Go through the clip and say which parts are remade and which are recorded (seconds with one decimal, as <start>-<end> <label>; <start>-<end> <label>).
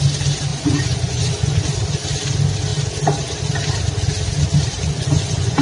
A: 0.0-0.5 recorded; 0.5-1.6 remade; 1.6-4.9 recorded; 4.9-5.6 remade